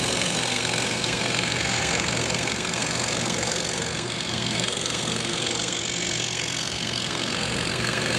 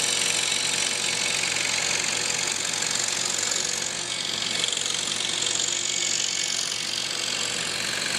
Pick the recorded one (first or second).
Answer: second